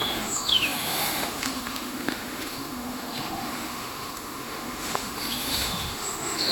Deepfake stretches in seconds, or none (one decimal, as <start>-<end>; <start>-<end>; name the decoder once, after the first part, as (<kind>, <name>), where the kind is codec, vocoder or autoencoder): 0.0-6.5 (autoencoder, DAC-VAE)